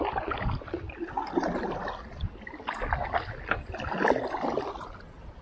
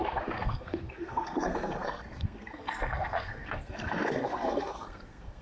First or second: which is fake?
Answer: second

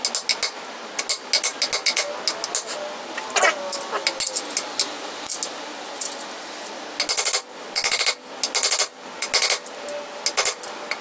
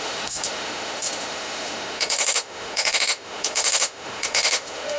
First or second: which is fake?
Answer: second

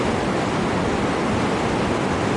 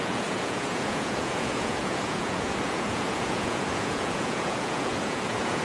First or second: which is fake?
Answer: second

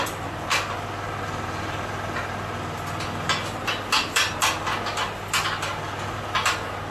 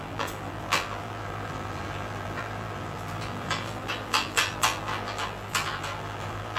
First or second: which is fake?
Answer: second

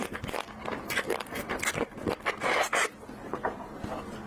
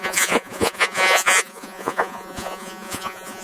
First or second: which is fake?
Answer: second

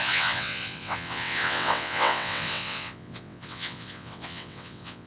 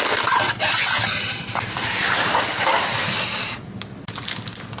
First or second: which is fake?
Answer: first